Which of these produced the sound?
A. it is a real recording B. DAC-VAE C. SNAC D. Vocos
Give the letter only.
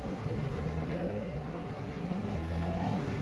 C